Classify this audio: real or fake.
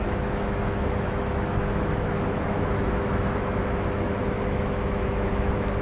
fake